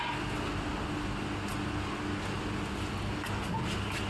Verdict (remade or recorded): recorded